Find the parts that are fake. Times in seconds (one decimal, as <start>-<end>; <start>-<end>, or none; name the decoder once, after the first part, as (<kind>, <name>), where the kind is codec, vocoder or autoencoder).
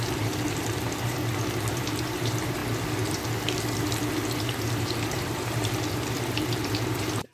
0.0-1.2 (vocoder, BigVGAN v2); 1.7-2.6; 4.8-7.3